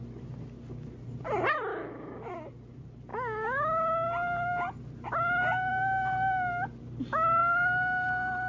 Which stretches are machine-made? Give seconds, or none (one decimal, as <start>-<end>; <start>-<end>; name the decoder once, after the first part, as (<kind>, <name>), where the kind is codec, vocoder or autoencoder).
1.7-2.3 (autoencoder, DAC-VAE)